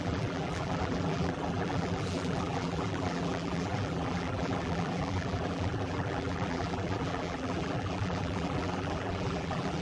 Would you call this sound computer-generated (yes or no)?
yes